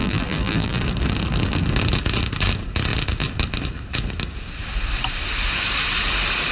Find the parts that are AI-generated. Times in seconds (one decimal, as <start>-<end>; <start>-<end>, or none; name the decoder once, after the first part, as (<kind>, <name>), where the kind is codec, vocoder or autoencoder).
0.0-0.8 (vocoder, BigVGAN v2)